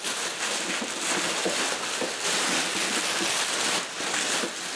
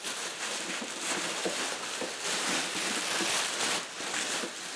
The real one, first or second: first